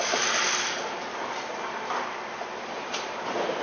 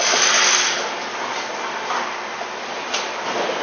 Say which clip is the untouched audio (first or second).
second